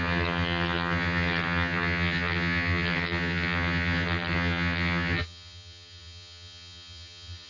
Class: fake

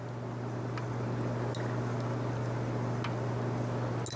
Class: real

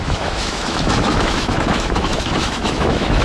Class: fake